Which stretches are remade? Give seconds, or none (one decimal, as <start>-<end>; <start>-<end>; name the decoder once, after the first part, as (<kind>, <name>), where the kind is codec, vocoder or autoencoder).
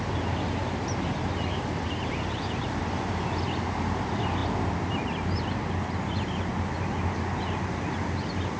none